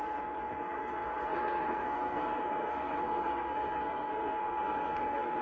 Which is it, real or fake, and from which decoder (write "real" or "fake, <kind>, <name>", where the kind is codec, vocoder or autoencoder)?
fake, codec, SNAC